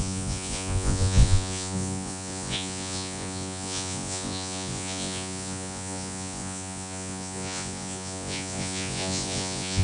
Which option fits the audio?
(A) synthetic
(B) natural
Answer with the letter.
A